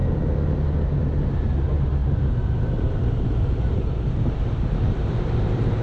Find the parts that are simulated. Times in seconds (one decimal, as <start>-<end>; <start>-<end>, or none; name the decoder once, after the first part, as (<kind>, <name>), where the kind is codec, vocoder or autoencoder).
2.0-5.8 (vocoder, BigVGAN v2)